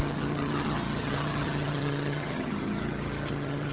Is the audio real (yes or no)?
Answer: no